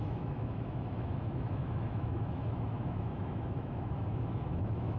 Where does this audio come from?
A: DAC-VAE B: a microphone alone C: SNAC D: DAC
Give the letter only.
A